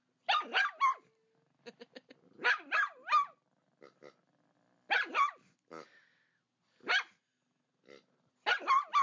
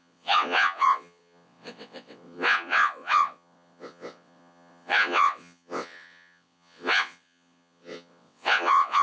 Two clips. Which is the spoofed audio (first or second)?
second